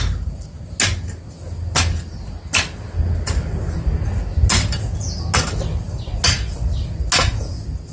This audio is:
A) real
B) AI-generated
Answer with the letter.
A